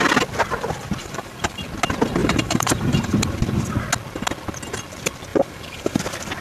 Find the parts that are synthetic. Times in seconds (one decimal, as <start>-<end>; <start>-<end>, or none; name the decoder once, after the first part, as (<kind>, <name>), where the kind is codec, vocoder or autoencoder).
1.0-1.6 (vocoder, BigVGAN v2); 2.2-3.1; 5.3-6.0